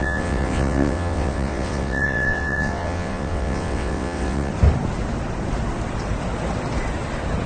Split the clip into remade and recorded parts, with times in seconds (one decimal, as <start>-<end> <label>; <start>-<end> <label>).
0.0-4.5 remade; 4.5-7.5 recorded